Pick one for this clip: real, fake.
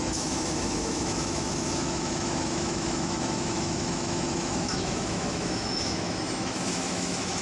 fake